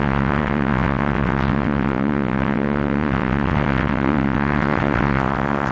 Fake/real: fake